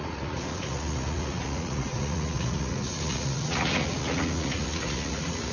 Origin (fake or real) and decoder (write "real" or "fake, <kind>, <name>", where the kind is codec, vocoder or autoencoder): fake, vocoder, Vocos